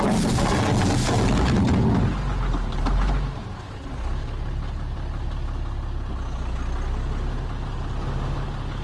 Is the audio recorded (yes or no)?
yes